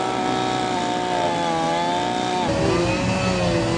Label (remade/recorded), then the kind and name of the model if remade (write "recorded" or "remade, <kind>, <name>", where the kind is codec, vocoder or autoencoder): recorded